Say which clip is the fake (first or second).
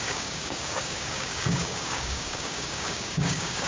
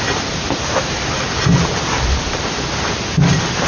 first